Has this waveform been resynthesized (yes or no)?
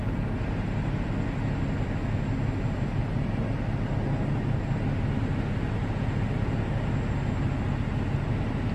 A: no